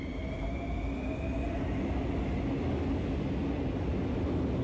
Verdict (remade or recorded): recorded